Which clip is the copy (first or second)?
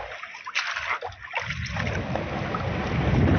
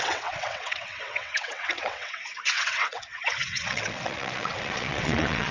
second